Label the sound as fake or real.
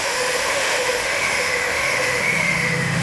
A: fake